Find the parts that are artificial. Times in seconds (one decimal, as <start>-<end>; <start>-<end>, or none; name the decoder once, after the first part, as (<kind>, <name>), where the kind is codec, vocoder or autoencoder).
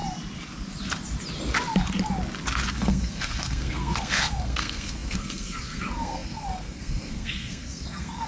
2.7-8.3 (codec, SNAC)